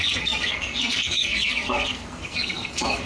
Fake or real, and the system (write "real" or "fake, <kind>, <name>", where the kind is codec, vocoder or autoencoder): fake, codec, SNAC